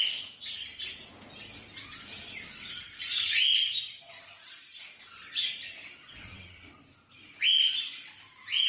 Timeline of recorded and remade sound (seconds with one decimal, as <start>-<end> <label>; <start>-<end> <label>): 0.0-6.0 recorded; 6.0-6.7 remade; 6.7-8.7 recorded